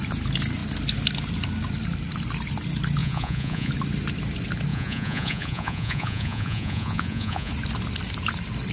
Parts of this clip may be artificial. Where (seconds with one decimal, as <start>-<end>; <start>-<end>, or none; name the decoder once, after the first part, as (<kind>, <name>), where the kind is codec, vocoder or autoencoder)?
3.0-3.7 (vocoder, Vocos); 4.7-7.5